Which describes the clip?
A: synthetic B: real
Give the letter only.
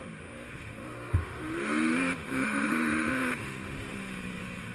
A